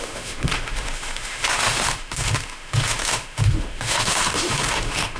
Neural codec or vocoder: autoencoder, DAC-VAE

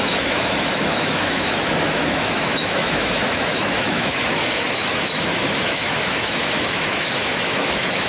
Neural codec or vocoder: autoencoder, DAC-VAE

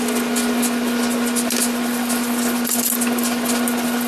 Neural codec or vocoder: none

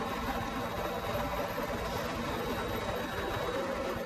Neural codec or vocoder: none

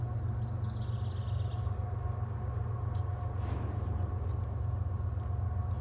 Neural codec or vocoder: none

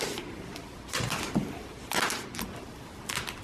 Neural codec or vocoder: none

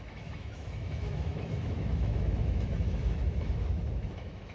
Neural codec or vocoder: autoencoder, DAC-VAE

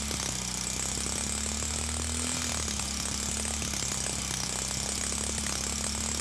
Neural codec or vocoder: none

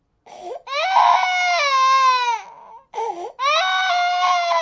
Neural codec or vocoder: none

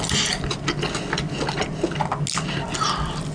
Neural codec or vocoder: none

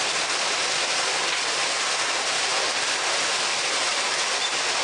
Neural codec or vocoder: none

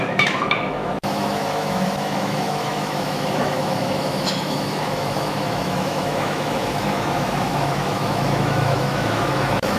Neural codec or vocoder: autoencoder, DAC-VAE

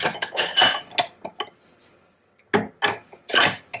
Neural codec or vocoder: none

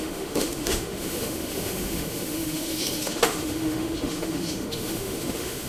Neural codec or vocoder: autoencoder, DAC-VAE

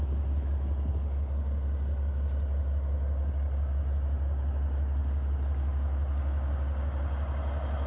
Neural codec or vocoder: none